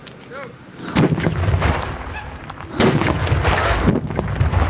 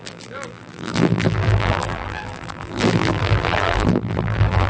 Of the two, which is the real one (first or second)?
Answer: first